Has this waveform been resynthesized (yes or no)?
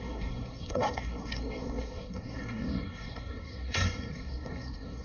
yes